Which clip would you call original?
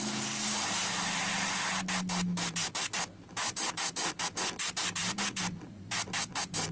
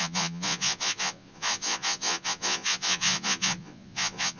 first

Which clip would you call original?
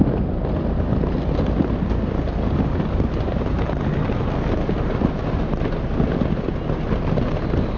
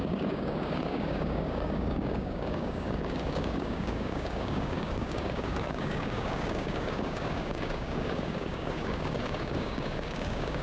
first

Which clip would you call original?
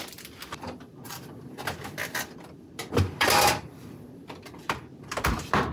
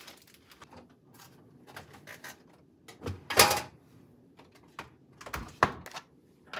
second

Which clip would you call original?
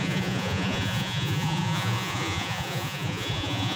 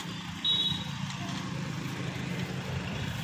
second